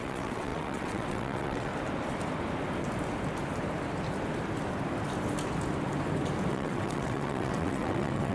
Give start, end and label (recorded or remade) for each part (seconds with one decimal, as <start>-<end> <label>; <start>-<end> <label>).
0.0-1.7 remade; 1.7-6.5 recorded; 6.5-8.3 remade